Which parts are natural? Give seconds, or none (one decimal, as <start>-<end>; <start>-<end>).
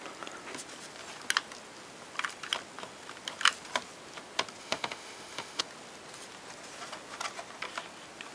0.0-4.6; 5.6-8.3